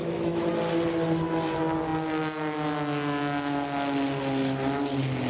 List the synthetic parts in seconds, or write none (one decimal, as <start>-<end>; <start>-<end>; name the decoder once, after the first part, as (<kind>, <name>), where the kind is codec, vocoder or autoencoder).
0.0-0.5 (autoencoder, DAC-VAE)